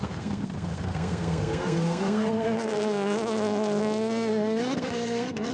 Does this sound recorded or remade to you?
remade